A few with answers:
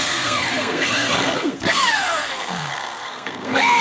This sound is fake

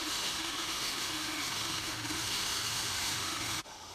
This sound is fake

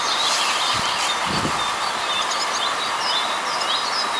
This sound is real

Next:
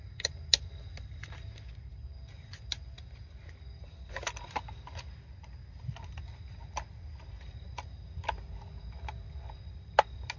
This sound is real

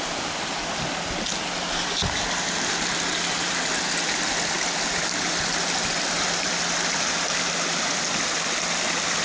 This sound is real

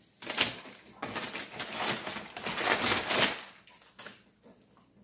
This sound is real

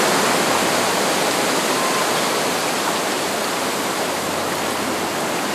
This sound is real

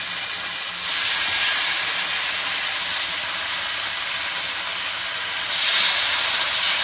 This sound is real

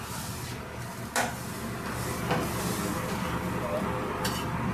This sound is real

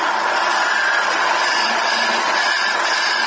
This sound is real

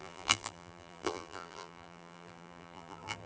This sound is fake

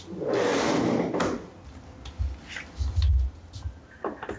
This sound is real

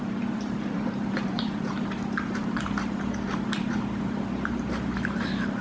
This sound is fake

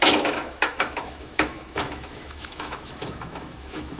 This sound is fake